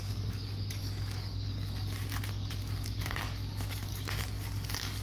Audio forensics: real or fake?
fake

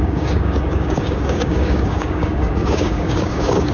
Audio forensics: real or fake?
fake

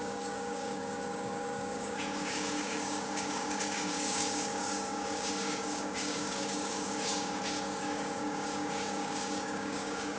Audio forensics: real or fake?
fake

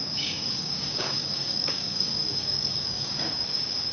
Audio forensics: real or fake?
fake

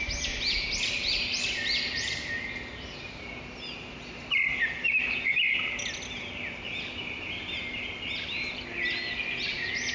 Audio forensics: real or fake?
real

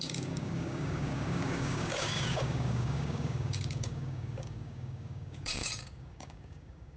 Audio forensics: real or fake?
fake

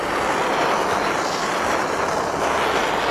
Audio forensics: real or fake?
real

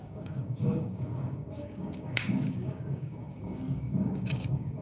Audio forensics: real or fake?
fake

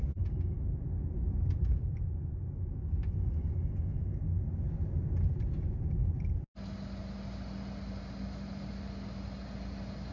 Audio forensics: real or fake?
real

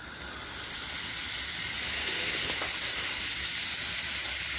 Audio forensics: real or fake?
real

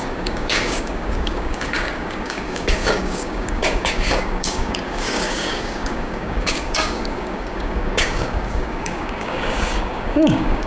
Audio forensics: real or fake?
fake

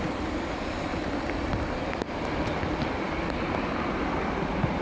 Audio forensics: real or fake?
real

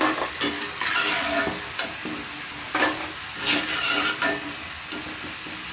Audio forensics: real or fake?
real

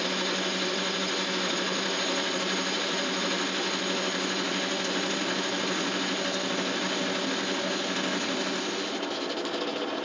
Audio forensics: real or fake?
real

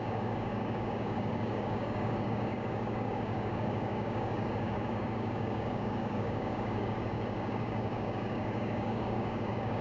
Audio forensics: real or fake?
fake